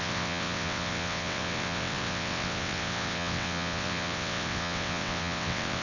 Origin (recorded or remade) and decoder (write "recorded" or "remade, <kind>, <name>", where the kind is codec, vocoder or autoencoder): remade, vocoder, WaveNeXt